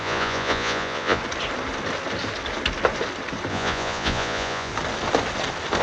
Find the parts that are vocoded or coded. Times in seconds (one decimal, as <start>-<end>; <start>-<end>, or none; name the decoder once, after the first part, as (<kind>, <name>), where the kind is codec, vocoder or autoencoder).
0.0-1.2 (vocoder, Vocos); 3.5-4.7

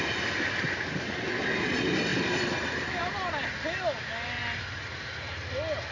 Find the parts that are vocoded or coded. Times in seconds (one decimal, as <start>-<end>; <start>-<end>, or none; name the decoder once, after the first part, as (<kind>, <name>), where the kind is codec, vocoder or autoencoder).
none

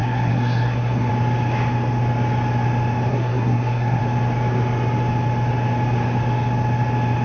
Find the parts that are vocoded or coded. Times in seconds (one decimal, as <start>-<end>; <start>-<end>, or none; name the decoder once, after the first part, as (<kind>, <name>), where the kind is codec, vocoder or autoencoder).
0.0-1.1 (codec, SNAC); 3.1-4.0

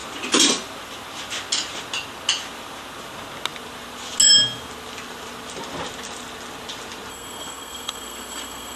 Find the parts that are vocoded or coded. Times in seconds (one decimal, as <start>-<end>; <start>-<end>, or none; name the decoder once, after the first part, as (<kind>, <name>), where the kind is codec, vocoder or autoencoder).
7.1-8.8 (codec, SNAC)

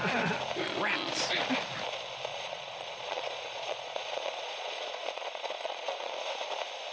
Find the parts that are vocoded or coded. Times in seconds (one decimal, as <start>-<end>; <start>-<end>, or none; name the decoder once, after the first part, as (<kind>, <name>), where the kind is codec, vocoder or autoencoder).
2.3-6.1 (vocoder, Vocos)